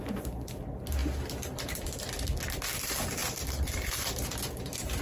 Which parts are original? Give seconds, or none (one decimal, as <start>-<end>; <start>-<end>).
0.0-3.2

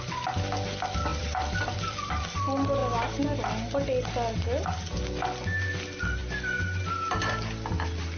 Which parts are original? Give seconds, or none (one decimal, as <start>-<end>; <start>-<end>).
0.0-1.1; 2.1-8.2

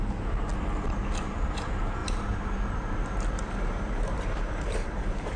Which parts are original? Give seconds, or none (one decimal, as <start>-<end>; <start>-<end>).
0.5-1.2

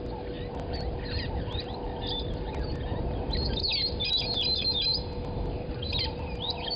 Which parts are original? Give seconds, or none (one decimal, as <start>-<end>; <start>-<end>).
0.0-6.8